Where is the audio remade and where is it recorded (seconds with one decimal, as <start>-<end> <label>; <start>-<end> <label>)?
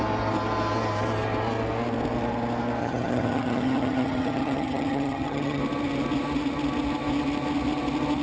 0.0-2.8 recorded; 2.8-5.6 remade; 5.6-8.2 recorded